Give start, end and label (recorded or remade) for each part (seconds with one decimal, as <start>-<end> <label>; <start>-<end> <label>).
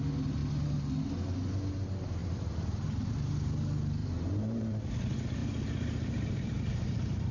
0.0-2.2 recorded; 2.2-3.1 remade; 3.1-4.0 recorded; 4.0-4.9 remade; 4.9-5.4 recorded; 5.4-7.3 remade